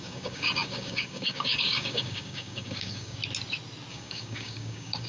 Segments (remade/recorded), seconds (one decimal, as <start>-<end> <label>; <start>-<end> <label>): 0.0-3.2 remade; 3.2-3.9 recorded; 3.9-5.1 remade